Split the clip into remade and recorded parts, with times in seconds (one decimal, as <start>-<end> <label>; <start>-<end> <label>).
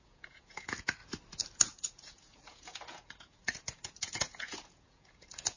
0.0-1.0 remade; 1.0-1.6 recorded; 1.6-5.6 remade